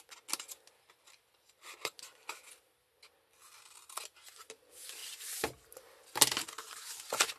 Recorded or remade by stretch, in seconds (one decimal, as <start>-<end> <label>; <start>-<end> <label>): 0.0-7.4 recorded